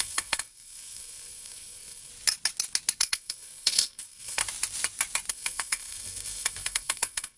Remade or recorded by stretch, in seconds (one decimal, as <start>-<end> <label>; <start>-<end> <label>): 0.0-2.1 remade; 2.1-3.0 recorded; 3.0-4.4 remade; 4.4-5.3 recorded; 5.3-7.4 remade